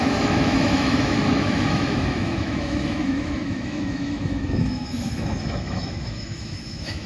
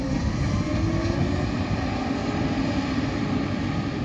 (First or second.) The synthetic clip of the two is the first